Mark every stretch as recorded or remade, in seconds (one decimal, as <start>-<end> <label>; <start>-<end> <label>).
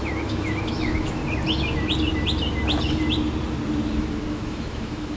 0.0-1.2 remade; 1.2-4.3 recorded; 4.3-5.2 remade